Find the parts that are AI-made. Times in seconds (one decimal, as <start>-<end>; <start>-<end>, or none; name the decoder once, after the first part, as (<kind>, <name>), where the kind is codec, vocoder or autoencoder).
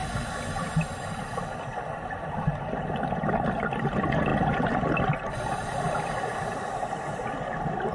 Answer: none